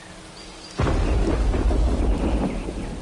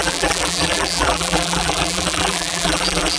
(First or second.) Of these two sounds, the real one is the first